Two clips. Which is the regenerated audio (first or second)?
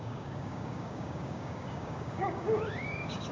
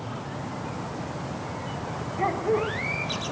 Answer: first